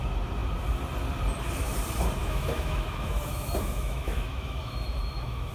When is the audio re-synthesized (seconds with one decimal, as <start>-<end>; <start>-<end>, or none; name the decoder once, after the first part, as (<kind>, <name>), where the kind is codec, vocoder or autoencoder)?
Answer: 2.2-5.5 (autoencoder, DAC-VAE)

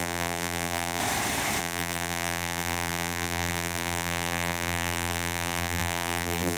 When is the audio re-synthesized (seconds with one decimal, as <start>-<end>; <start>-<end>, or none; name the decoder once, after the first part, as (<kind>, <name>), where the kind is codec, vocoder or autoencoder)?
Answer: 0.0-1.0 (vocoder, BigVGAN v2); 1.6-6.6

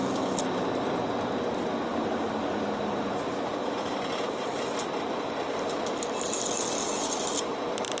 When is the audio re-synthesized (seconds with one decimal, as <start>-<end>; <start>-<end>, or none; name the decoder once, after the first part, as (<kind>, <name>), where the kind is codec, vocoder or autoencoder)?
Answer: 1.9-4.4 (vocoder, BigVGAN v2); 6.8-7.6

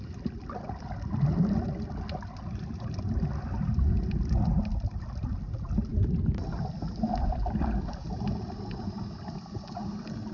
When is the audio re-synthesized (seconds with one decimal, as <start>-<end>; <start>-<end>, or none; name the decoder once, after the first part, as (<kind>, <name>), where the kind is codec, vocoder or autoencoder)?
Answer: none